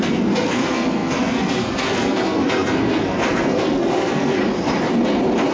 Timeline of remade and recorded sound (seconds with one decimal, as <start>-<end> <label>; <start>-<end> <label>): 0.0-4.4 remade; 4.4-5.5 recorded